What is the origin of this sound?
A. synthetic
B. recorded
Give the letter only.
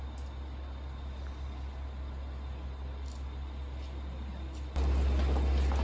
B